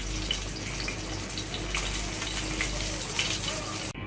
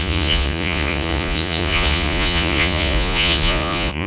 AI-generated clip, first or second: second